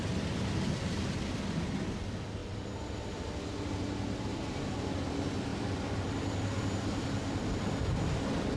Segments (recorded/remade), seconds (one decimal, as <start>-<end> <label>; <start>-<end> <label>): 0.0-5.5 recorded; 5.5-7.3 remade; 7.3-8.6 recorded